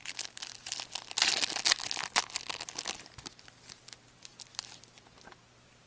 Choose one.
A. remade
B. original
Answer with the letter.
B